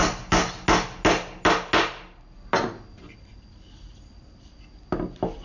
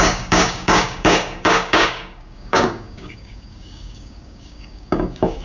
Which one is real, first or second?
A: first